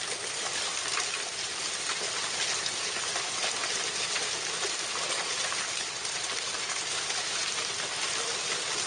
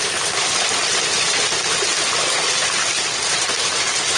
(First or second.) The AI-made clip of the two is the first